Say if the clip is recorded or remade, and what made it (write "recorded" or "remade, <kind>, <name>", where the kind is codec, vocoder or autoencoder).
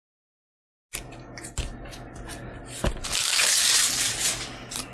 recorded